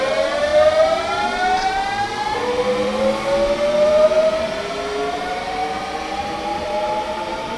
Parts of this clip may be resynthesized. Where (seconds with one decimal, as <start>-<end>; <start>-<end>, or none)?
0.0-0.5; 5.1-5.6; 6.2-7.6